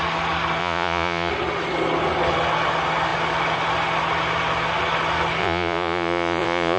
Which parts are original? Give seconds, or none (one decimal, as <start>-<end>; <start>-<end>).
0.0-0.6; 1.3-5.4